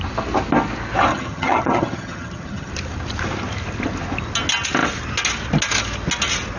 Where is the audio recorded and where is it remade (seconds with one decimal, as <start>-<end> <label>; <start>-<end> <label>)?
0.0-1.1 recorded; 1.1-2.7 remade; 2.7-6.6 recorded

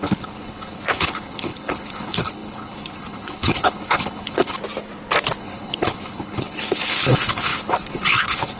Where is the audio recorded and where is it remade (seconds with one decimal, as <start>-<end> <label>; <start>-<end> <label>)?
0.0-4.6 remade; 4.6-5.4 recorded; 5.4-8.6 remade